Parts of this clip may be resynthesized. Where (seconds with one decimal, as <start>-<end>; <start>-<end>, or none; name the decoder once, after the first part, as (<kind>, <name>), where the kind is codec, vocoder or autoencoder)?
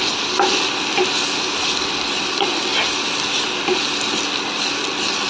none